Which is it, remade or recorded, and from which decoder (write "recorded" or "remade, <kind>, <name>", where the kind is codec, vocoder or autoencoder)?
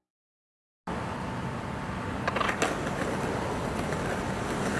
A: recorded